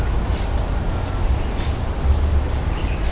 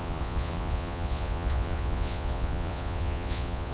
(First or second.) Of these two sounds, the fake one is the second